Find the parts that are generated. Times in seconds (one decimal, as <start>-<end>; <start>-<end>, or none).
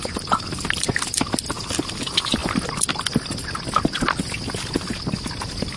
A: none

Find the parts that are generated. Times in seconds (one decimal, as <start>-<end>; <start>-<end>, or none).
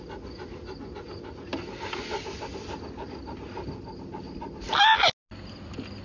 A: none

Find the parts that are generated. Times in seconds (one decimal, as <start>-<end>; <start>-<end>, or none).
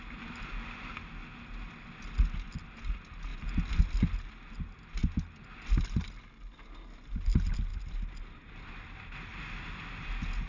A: none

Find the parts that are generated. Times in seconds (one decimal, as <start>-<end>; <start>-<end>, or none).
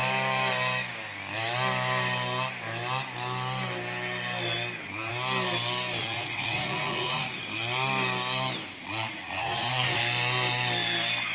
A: 6.0-7.4; 8.8-10.0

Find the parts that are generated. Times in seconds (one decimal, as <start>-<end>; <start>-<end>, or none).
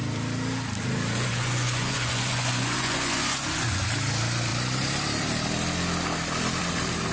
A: 1.3-3.8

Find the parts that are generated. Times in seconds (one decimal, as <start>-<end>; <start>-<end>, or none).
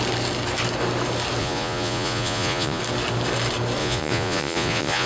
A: 1.4-2.8; 3.8-5.1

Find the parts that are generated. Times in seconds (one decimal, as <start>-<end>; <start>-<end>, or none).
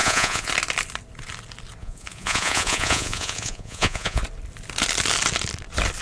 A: 0.0-0.5; 1.8-4.2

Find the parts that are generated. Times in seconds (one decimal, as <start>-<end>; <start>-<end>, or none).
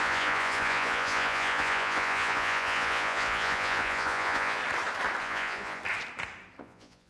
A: 0.0-4.6; 5.2-5.8; 6.6-7.1